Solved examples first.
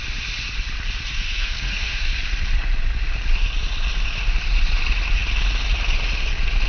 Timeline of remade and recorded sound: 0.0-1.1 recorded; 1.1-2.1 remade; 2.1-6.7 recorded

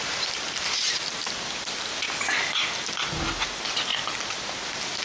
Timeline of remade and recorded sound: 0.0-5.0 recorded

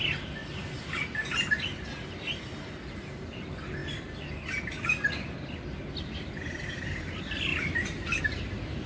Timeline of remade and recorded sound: 0.0-8.9 recorded

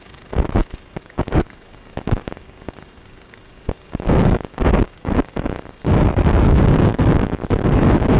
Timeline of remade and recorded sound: 0.0-8.2 remade

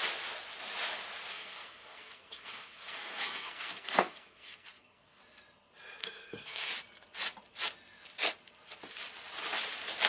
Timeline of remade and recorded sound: 0.0-1.3 recorded; 1.3-5.2 remade; 5.2-6.0 recorded; 6.0-6.7 remade; 6.7-10.1 recorded

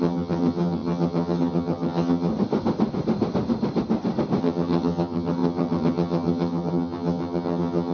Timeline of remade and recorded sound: 0.0-2.3 remade; 2.3-4.4 recorded; 4.4-7.9 remade

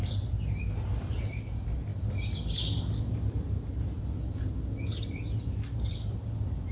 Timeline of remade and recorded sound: 0.0-6.7 recorded